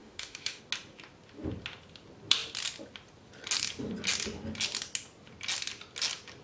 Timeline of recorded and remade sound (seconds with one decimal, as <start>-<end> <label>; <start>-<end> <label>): 0.0-0.6 remade; 0.6-6.4 recorded